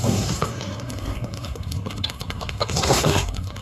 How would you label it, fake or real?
fake